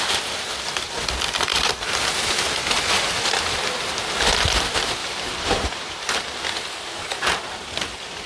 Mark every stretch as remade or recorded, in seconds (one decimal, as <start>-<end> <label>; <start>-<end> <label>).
0.0-1.5 recorded; 1.5-2.1 remade; 2.1-5.0 recorded; 5.0-6.2 remade; 6.2-8.3 recorded